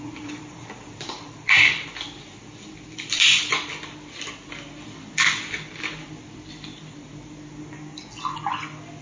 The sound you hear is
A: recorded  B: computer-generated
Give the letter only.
A